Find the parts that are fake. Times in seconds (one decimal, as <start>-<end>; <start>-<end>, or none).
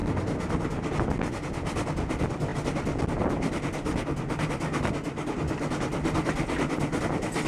none